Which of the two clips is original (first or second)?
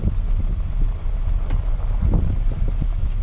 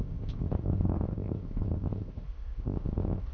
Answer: first